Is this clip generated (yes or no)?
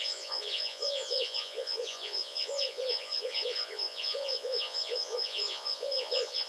yes